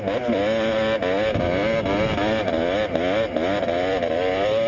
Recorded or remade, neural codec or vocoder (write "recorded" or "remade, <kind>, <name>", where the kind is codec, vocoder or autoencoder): recorded